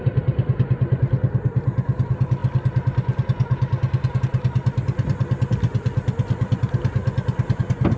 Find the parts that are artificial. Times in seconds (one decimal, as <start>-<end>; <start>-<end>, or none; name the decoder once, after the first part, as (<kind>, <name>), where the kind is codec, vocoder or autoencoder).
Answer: none